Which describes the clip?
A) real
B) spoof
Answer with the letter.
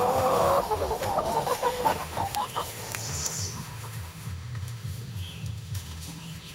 B